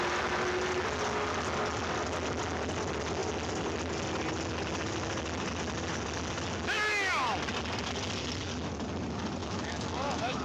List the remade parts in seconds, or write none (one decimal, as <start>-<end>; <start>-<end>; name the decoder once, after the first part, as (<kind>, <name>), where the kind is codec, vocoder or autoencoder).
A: 9.4-10.4 (autoencoder, DAC-VAE)